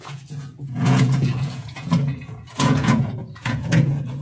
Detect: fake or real fake